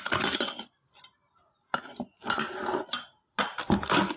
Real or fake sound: real